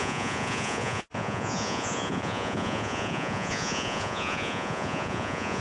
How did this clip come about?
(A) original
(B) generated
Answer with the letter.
B